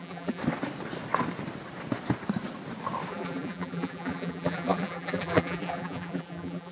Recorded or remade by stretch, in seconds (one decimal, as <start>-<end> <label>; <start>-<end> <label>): 0.0-0.4 remade; 0.4-3.1 recorded; 3.1-6.7 remade